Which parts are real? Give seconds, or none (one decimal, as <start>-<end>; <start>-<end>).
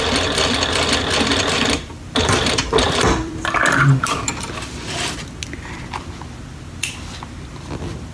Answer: 0.0-1.3; 4.9-8.1